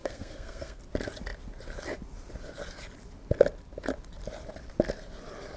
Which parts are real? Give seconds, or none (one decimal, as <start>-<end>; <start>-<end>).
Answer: 0.8-5.6